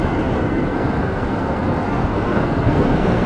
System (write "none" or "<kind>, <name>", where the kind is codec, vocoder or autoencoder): codec, SNAC